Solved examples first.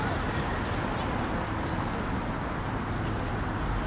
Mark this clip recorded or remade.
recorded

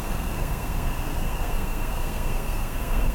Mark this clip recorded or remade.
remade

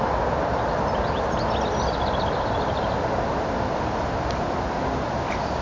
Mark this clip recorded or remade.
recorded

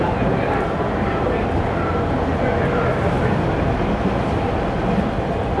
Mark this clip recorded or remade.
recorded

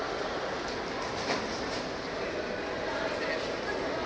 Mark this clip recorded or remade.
recorded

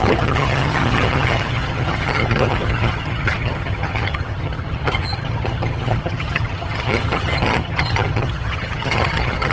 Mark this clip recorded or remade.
remade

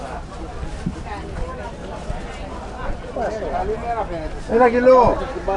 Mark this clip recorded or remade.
recorded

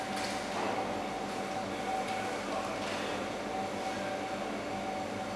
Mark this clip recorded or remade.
recorded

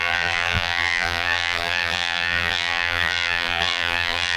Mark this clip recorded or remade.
remade